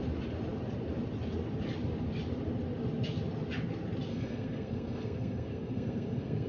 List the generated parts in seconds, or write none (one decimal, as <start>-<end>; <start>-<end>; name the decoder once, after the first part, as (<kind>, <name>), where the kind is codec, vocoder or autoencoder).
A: 4.1-6.5 (codec, SNAC)